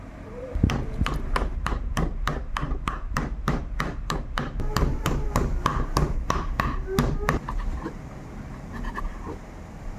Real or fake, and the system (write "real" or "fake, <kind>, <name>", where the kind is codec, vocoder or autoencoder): fake, vocoder, BigVGAN v2